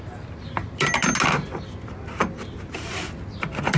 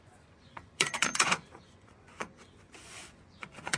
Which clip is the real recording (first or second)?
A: first